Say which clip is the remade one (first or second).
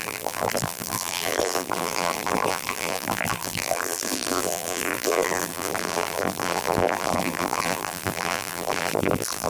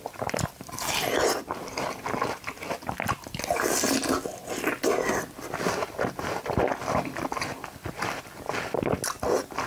first